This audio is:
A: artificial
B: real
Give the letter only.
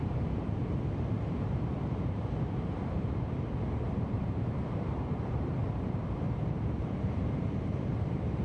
A